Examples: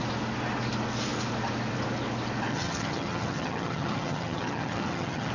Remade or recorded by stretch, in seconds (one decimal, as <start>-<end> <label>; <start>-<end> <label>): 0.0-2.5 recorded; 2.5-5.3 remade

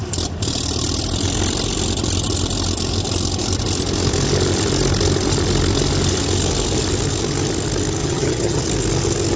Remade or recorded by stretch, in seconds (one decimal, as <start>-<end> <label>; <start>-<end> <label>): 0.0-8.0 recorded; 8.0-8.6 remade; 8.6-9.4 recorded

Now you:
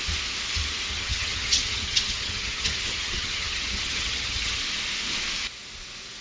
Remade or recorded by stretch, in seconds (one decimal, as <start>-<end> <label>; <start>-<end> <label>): 0.0-0.9 recorded; 0.9-4.6 remade; 4.6-6.2 recorded

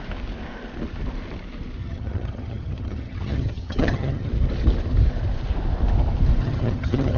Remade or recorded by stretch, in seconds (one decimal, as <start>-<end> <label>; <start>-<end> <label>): 0.0-1.8 recorded; 1.8-4.3 remade; 4.3-6.4 recorded; 6.4-7.2 remade

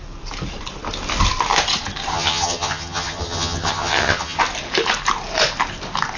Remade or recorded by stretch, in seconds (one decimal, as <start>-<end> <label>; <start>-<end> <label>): 0.0-2.1 recorded; 2.1-4.4 remade; 4.4-6.2 recorded

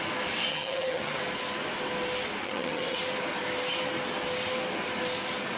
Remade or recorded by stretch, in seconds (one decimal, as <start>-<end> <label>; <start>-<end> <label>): 0.0-0.5 recorded; 0.5-1.2 remade; 1.2-2.4 recorded; 2.4-3.0 remade; 3.0-5.6 recorded

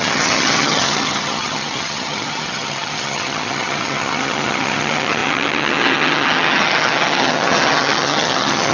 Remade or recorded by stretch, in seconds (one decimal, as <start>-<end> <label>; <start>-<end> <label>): 0.0-8.7 remade